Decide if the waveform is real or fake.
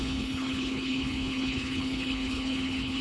fake